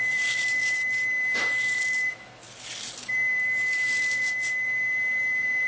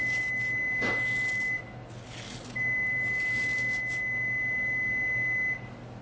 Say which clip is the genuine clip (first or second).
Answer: second